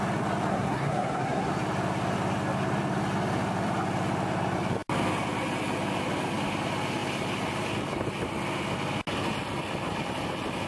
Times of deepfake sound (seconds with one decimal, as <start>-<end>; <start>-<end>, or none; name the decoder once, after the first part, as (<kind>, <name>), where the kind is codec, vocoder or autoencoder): 0.5-1.5 (codec, SNAC)